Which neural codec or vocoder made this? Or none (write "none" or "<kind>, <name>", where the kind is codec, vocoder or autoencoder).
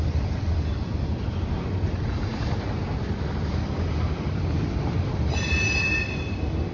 vocoder, BigVGAN v2